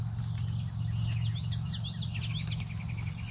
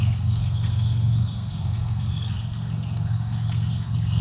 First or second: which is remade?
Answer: second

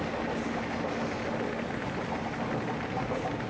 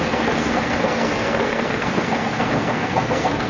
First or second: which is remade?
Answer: second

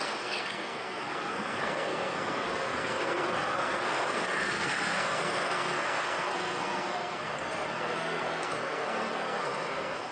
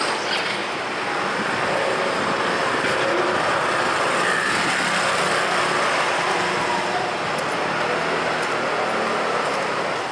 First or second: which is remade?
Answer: first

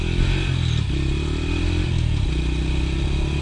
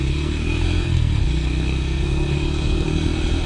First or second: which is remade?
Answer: second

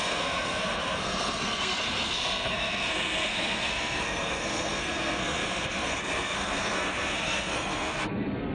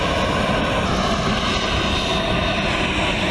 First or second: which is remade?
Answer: first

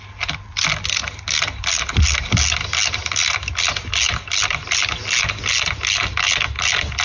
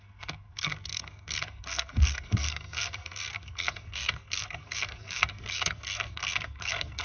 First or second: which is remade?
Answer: second